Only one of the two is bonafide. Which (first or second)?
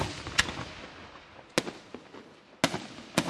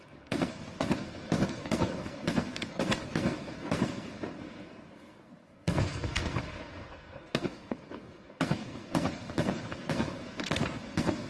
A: first